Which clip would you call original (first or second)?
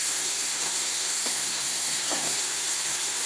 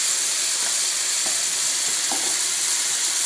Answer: second